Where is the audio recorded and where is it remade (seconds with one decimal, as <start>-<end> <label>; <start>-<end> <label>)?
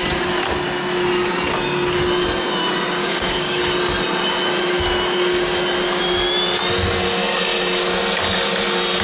0.0-3.0 recorded; 3.0-3.6 remade; 3.6-9.0 recorded